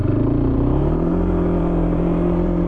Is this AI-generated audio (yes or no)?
yes